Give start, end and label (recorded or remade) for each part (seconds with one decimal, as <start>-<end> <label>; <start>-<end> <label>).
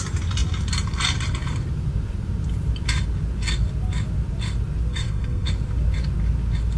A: 0.0-4.9 recorded; 4.9-5.5 remade; 5.5-6.8 recorded